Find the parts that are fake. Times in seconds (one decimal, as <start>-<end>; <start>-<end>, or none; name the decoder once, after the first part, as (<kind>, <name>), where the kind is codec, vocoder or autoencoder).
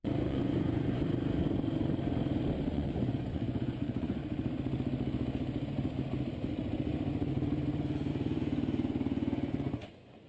0.0-1.0 (vocoder, Vocos); 2.7-4.2; 8.1-10.3